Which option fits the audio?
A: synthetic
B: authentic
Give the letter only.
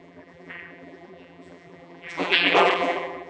A